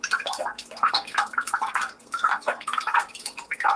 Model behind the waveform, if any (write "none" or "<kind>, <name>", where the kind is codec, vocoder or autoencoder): codec, SNAC